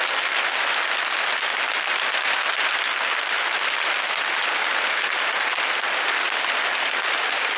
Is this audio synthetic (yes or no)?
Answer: no